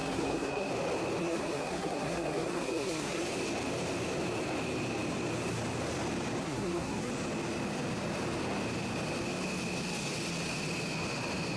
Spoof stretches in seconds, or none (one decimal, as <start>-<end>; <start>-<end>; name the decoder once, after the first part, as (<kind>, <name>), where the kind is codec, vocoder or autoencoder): 0.0-0.7 (codec, SNAC); 1.2-3.2; 6.4-7.1

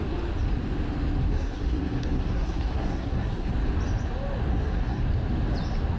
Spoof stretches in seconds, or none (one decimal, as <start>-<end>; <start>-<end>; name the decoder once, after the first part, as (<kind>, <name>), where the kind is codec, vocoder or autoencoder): 1.3-3.5 (codec, SNAC); 4.5-5.0

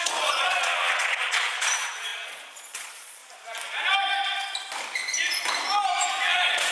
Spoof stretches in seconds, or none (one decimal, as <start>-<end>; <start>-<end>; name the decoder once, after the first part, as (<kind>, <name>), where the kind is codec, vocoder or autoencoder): 0.0-3.2 (vocoder, Vocos); 6.1-6.7

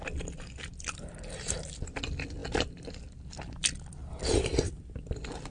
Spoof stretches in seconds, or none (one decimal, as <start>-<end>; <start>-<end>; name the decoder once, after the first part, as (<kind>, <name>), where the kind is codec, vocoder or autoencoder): 4.0-4.8 (vocoder, BigVGAN v2)

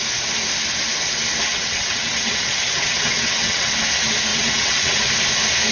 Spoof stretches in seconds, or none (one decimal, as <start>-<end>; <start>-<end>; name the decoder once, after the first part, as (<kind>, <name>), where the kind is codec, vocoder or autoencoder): 1.5-3.7 (vocoder, WaveNeXt); 4.3-5.0

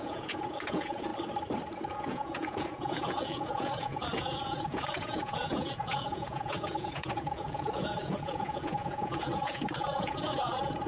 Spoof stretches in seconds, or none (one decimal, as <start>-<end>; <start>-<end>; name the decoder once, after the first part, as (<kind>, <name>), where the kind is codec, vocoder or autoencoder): 0.0-1.1 (vocoder, Vocos); 1.7-10.9

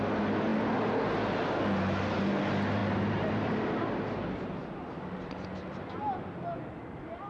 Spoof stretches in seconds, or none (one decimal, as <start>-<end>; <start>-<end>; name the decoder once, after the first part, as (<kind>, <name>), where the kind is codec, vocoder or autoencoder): none

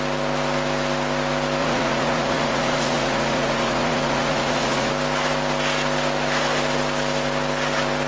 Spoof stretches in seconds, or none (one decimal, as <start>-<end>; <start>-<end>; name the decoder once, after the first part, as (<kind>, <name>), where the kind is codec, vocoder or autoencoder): 1.6-4.9 (vocoder, Vocos)